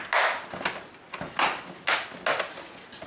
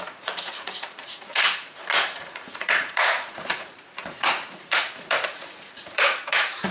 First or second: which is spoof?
second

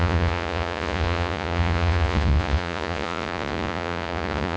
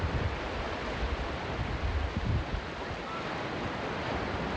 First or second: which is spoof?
first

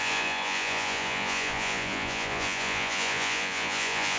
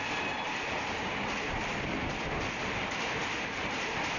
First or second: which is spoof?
first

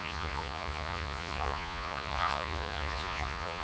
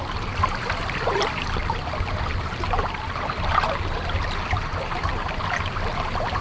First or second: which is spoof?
first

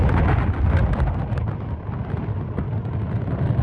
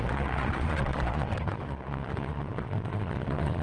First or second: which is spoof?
second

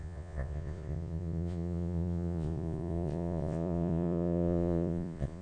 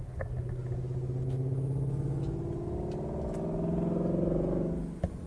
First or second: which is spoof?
first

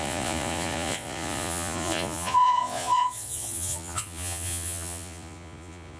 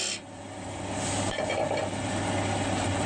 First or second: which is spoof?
first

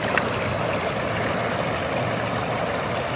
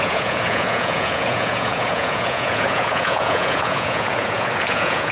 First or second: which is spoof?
second